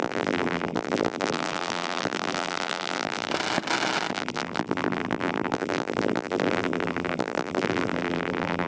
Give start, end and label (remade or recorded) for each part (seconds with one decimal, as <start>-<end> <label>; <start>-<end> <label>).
0.0-3.3 remade; 3.3-4.1 recorded; 4.1-8.7 remade